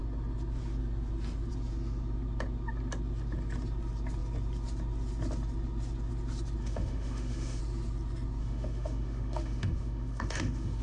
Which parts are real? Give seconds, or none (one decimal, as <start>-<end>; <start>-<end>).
0.0-6.6; 7.6-8.4